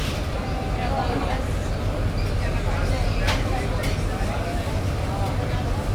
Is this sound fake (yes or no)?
no